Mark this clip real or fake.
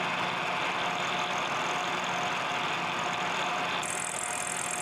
real